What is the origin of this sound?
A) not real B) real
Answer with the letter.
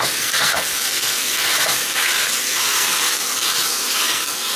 A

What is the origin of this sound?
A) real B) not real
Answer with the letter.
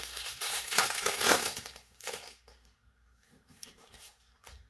B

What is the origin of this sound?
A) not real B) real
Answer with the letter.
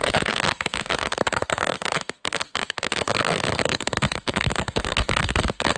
A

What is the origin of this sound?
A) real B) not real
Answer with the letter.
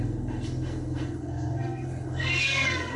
B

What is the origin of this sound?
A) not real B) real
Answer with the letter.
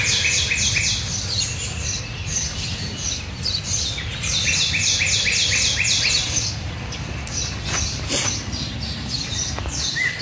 B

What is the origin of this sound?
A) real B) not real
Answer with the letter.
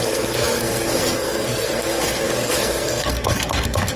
B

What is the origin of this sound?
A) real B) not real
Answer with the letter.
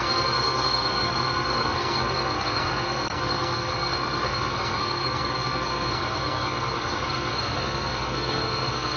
B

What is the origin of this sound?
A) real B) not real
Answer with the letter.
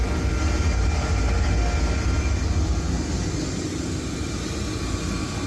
A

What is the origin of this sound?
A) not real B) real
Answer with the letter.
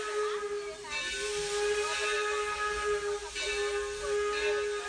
B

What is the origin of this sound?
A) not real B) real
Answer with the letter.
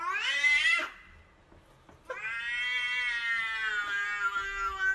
B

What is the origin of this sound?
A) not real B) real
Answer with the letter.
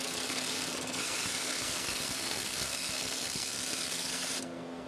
A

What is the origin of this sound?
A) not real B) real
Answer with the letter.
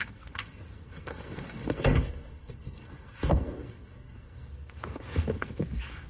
A